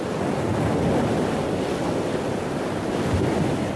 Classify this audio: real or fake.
real